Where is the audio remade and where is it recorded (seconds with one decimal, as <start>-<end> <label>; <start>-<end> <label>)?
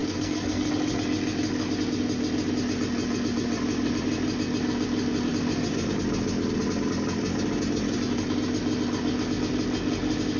0.0-0.7 remade; 0.7-10.4 recorded